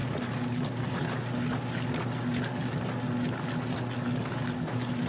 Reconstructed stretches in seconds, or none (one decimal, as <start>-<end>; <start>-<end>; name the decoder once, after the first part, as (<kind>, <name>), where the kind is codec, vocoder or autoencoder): none